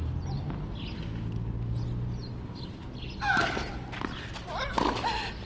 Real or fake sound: real